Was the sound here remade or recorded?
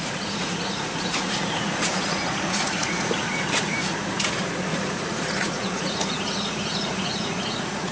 remade